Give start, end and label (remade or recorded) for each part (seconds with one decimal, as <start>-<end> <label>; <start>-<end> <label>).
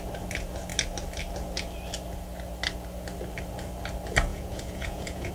0.0-4.3 recorded; 4.3-5.3 remade